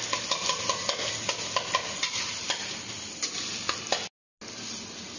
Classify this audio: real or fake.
real